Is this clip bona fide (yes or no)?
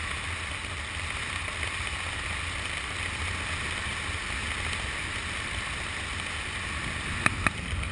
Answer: yes